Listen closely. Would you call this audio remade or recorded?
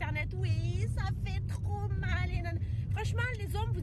recorded